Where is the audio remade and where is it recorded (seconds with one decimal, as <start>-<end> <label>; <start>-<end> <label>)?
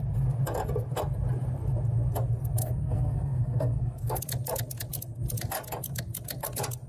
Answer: 0.0-2.6 recorded; 2.6-4.2 remade; 4.2-6.9 recorded